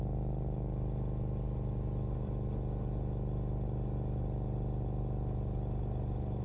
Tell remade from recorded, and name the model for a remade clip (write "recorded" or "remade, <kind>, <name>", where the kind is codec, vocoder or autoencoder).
recorded